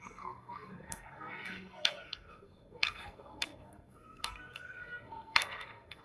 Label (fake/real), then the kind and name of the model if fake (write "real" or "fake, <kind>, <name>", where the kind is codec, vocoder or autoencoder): fake, codec, SNAC